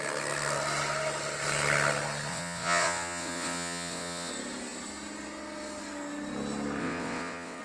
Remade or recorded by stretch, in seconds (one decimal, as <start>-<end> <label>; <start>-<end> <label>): 0.0-2.3 recorded; 2.3-4.3 remade; 4.3-6.8 recorded; 6.8-7.6 remade